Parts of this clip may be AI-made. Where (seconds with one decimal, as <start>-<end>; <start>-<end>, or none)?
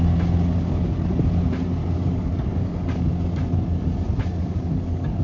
1.8-3.1; 4.4-5.2